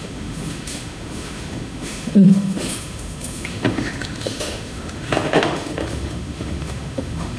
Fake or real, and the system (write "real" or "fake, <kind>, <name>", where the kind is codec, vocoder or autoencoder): fake, autoencoder, DAC-VAE